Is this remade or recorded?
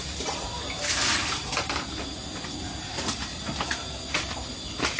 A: recorded